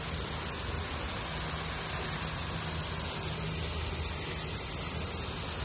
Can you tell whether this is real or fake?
real